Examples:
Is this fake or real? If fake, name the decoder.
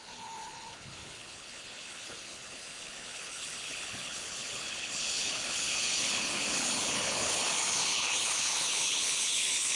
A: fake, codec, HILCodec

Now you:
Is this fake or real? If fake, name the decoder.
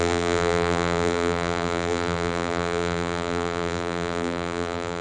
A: fake, vocoder, BigVGAN v2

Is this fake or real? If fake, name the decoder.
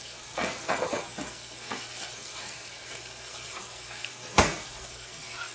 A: fake, codec, SNAC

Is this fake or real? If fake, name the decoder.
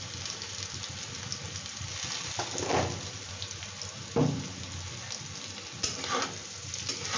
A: real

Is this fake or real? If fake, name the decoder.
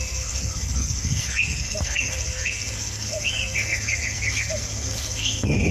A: fake, codec, SNAC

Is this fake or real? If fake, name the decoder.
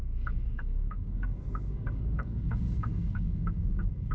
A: fake, codec, SNAC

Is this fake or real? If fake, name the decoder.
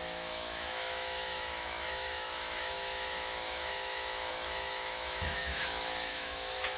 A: fake, autoencoder, DAC-VAE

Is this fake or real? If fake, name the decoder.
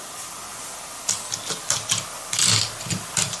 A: real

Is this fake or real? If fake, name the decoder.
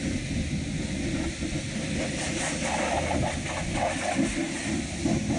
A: real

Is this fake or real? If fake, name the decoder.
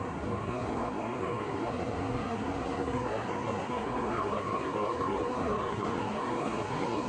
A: fake, codec, SNAC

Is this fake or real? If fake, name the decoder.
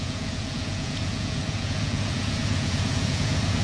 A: fake, vocoder, Vocos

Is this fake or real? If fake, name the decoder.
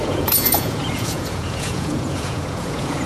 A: fake, vocoder, Vocos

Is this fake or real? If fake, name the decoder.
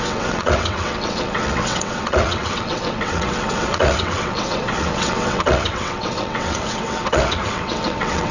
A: fake, vocoder, WaveNeXt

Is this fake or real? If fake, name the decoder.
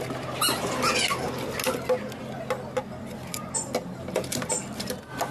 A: real